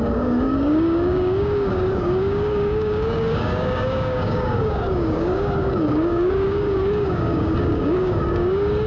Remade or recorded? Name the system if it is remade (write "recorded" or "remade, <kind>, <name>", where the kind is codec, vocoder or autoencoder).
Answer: remade, codec, DAC